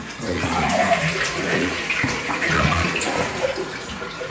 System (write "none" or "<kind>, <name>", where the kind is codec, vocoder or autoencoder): vocoder, Vocos